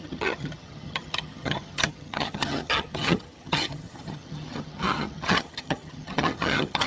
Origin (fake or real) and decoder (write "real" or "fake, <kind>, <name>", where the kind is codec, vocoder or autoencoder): fake, vocoder, HiFi-GAN